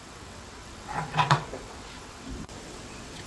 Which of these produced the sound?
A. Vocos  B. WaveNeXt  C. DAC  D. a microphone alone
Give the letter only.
B